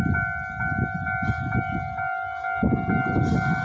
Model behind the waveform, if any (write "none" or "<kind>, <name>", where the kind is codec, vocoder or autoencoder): none